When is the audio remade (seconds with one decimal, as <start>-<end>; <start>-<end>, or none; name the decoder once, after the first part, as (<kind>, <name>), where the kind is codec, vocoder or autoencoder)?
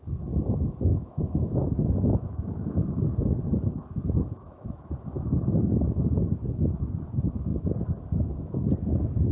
0.9-4.9 (autoencoder, DAC-VAE)